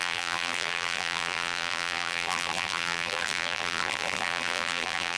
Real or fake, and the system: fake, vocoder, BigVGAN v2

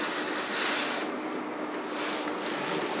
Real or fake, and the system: real